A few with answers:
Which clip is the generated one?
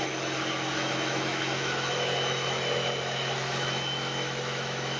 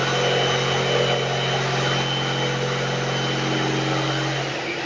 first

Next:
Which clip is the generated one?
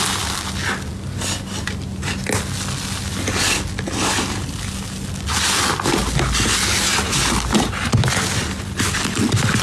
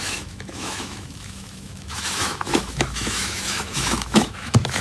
second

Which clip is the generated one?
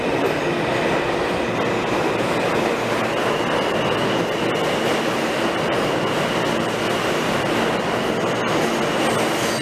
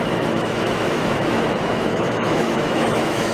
second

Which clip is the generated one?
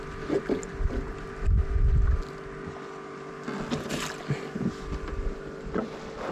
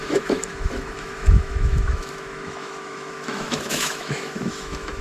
second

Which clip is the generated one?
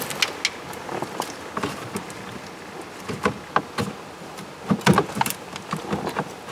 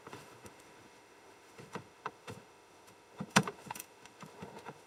second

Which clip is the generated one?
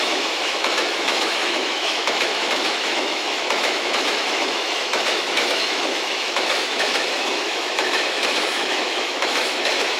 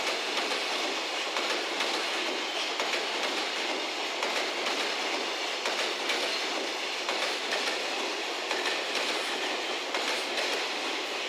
first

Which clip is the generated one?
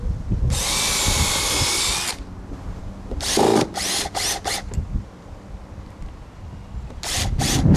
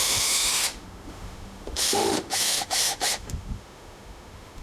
second